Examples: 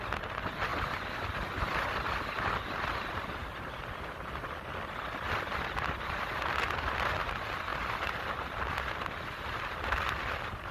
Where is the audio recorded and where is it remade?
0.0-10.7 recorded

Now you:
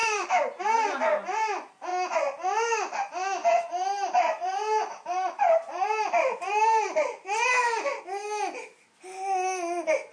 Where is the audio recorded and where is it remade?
0.0-0.6 remade; 0.6-3.4 recorded; 3.4-8.0 remade; 8.0-10.1 recorded

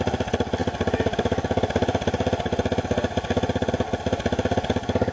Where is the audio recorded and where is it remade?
0.0-0.6 recorded; 0.6-3.7 remade; 3.7-5.1 recorded

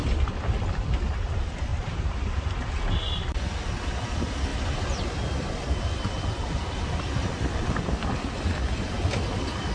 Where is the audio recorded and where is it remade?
0.0-1.7 recorded; 1.7-2.7 remade; 2.7-4.5 recorded; 4.5-5.0 remade; 5.0-9.7 recorded

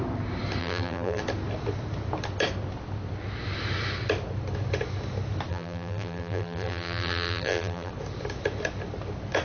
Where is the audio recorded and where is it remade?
0.0-0.6 recorded; 0.6-1.2 remade; 1.2-5.5 recorded; 5.5-7.9 remade; 7.9-9.4 recorded

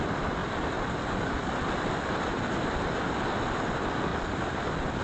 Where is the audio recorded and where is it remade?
0.0-0.4 recorded; 0.4-0.9 remade; 0.9-4.1 recorded; 4.1-5.0 remade